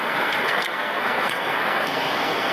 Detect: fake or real fake